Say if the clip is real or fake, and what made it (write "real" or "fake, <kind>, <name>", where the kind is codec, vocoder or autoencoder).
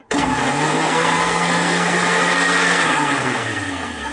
fake, codec, SNAC